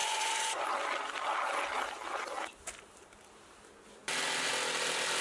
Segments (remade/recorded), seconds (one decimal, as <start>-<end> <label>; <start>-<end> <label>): 0.0-0.7 remade; 0.7-5.2 recorded